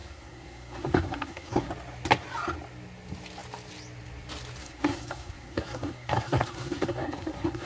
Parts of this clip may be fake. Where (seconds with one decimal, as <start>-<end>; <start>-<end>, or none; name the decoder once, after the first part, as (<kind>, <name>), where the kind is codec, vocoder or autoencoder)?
0.0-1.7 (codec, SNAC); 4.6-7.7